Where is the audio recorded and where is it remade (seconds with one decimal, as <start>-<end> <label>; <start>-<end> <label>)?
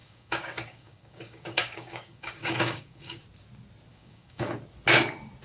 0.0-3.2 remade; 3.2-3.9 recorded; 3.9-4.6 remade; 4.6-5.4 recorded